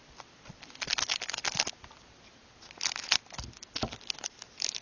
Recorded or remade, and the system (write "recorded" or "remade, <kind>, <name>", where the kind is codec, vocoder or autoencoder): recorded